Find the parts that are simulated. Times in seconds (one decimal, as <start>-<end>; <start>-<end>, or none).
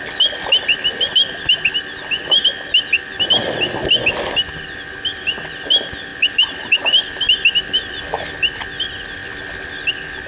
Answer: none